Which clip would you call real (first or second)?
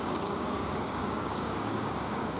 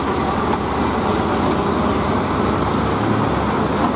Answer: second